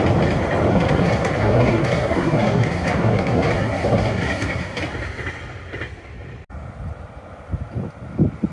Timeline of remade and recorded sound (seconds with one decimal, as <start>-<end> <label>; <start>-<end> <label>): 0.0-0.7 recorded; 0.7-4.8 remade; 4.8-8.5 recorded